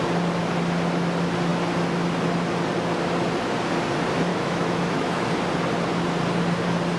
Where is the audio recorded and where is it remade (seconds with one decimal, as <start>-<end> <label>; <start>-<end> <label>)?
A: 0.0-4.3 recorded; 4.3-5.3 remade; 5.3-7.0 recorded